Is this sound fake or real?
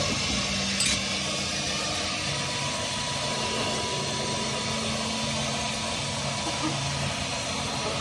real